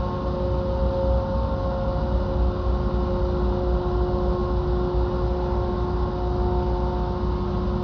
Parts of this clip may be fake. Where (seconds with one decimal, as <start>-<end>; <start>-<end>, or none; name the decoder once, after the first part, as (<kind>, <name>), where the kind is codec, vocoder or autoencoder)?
none